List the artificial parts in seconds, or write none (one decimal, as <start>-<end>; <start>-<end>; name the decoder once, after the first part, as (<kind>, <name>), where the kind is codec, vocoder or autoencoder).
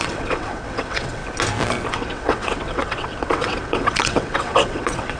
0.0-1.2 (vocoder, WaveNeXt); 1.9-5.2